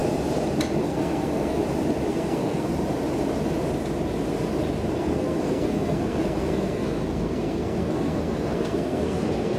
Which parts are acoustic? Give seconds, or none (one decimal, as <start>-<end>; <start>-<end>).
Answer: 0.0-0.8; 1.6-2.1; 2.7-4.9